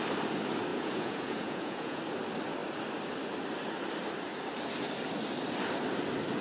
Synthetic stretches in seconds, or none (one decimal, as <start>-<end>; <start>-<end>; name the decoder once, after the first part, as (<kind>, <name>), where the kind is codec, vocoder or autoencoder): 0.7-2.0 (vocoder, Vocos)